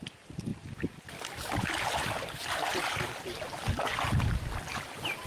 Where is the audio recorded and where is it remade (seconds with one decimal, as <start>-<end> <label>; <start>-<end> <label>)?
0.0-5.3 remade